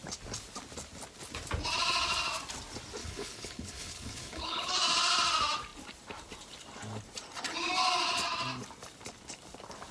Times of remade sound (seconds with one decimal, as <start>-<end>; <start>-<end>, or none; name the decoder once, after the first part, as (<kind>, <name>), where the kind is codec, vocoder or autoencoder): 3.0-4.7 (codec, HILCodec)